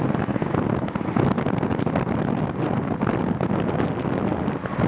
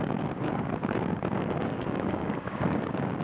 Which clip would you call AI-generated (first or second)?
second